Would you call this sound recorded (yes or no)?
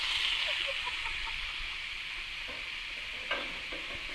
yes